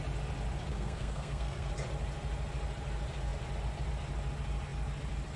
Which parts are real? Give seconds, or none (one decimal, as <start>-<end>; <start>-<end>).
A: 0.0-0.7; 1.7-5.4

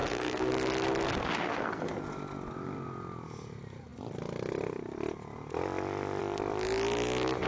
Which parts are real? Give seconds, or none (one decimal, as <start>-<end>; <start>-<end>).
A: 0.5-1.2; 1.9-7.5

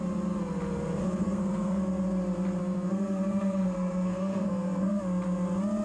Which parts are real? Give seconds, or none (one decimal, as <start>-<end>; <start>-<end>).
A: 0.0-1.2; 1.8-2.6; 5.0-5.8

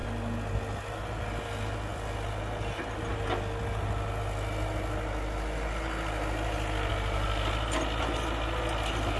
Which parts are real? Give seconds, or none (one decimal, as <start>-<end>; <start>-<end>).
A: 0.0-9.2

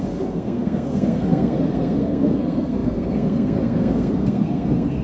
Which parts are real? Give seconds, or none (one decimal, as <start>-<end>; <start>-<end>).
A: none